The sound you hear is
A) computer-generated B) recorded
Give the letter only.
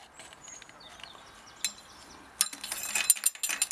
B